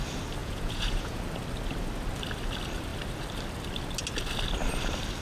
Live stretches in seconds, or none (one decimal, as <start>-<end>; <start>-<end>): 0.0-0.4; 1.2-5.2